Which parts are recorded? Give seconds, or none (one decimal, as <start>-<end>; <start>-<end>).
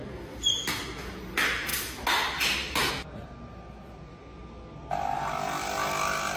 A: 0.6-1.1; 1.7-2.9